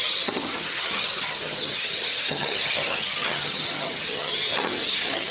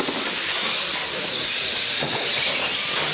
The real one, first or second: second